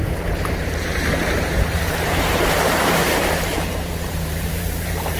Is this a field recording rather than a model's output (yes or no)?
no